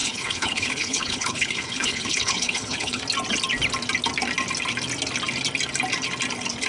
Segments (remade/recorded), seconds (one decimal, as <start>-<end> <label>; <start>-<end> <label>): 0.0-3.0 remade; 3.0-6.7 recorded

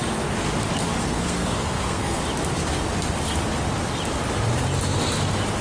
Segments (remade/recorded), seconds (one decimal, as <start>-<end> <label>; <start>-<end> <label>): 0.0-1.0 recorded; 1.0-2.2 remade; 2.2-5.6 recorded

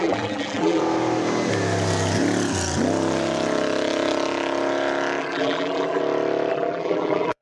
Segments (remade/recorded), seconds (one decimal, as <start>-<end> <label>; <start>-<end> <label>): 0.0-0.8 remade; 0.8-5.2 recorded; 5.2-6.0 remade; 6.0-6.5 recorded; 6.5-7.4 remade

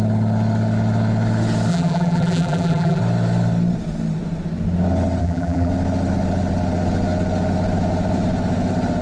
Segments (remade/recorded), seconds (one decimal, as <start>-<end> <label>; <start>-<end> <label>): 0.0-1.7 recorded; 1.7-3.0 remade; 3.0-5.2 recorded; 5.2-5.7 remade; 5.7-9.0 recorded

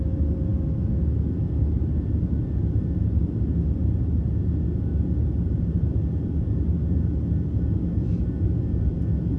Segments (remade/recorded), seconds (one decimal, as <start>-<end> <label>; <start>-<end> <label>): 0.0-3.8 recorded; 3.8-4.3 remade; 4.3-4.9 recorded; 4.9-7.1 remade; 7.1-9.4 recorded

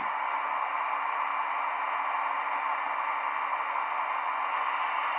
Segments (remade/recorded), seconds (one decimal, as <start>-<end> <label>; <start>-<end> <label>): 0.0-1.3 remade; 1.3-2.3 recorded; 2.3-5.2 remade